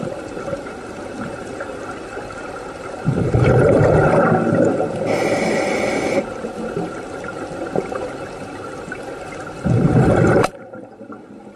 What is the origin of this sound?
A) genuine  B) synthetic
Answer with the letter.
B